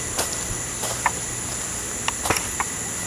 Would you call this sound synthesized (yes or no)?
no